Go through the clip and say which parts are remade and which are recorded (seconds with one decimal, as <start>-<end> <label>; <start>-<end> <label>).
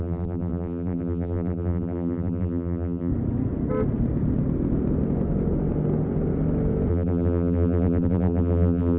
0.0-3.1 remade; 3.1-6.9 recorded; 6.9-9.0 remade